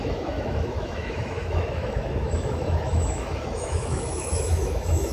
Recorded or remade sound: remade